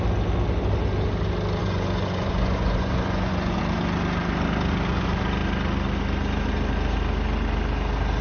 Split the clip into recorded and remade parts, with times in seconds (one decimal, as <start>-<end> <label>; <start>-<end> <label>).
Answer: 0.0-1.6 recorded; 1.6-3.6 remade; 3.6-8.2 recorded